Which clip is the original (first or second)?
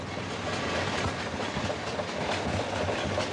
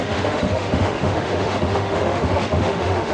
first